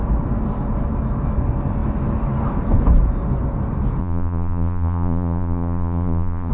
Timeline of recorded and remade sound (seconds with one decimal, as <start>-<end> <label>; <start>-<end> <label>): 0.0-4.0 recorded; 4.0-6.5 remade